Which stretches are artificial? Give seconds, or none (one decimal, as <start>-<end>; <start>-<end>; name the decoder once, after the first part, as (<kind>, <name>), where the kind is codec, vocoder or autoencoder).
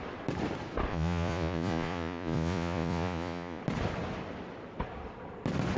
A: 0.9-3.6 (vocoder, Vocos)